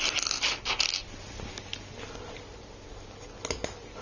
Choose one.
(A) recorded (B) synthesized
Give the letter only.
A